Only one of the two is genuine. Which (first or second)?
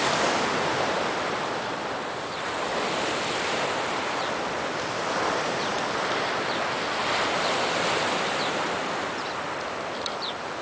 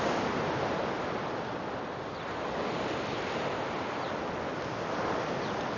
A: second